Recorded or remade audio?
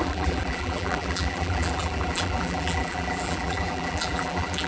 remade